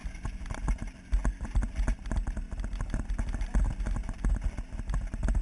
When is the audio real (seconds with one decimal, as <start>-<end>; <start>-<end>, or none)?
0.0-5.4